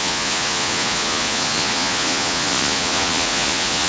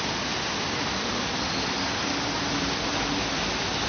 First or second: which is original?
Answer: second